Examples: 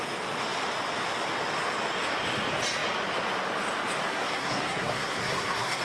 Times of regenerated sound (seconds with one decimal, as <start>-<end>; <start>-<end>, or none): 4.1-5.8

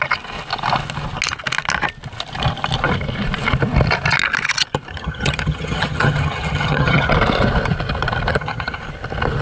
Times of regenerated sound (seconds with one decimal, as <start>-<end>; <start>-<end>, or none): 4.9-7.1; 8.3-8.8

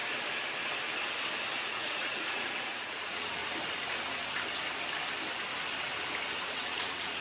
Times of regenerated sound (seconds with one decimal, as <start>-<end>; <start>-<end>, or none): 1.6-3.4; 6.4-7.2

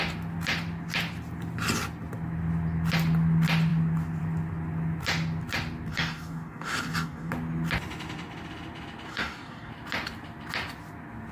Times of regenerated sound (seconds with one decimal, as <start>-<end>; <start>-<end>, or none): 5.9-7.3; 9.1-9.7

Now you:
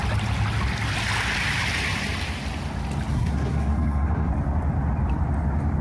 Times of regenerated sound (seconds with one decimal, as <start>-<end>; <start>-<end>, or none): 3.1-4.3